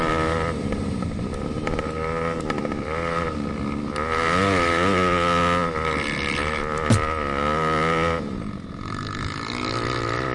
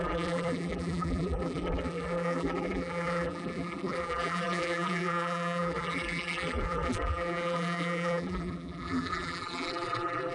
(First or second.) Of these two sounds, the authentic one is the first